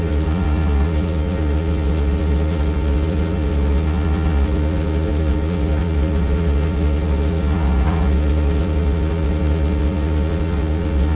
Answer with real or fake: fake